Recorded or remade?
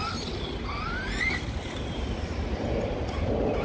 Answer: recorded